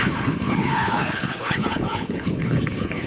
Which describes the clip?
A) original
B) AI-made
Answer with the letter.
B